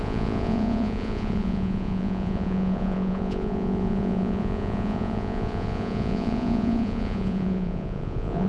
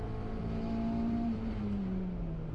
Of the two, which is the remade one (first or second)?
first